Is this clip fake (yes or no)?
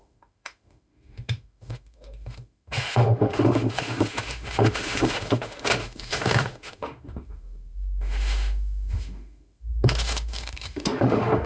yes